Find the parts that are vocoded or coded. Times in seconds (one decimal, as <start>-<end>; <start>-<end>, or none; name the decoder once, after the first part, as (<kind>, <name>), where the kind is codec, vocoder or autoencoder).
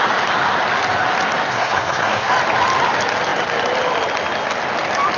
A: 1.5-2.3 (codec, SNAC)